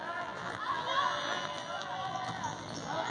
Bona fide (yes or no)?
no